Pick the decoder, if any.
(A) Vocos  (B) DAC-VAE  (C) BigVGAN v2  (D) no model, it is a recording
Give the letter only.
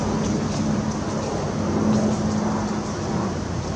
D